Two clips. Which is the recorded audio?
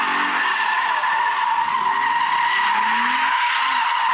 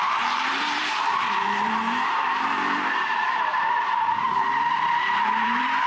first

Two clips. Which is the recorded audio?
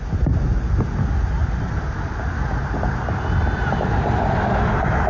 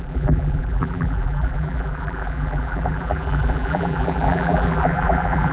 first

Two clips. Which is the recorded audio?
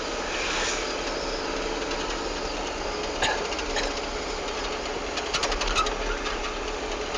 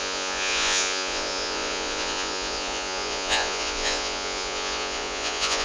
first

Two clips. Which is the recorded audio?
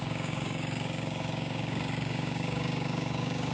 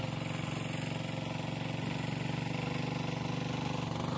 second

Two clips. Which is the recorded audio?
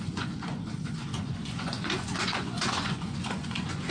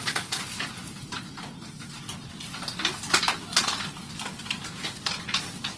second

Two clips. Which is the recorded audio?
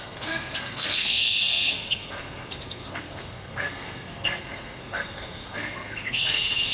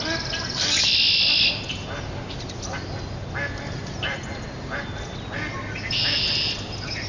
second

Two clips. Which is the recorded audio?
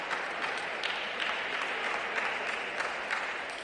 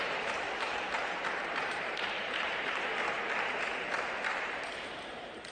first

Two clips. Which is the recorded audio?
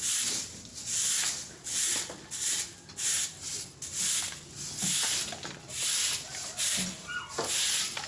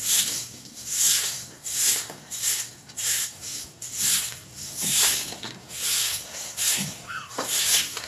first